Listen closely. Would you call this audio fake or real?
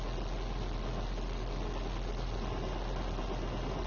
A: real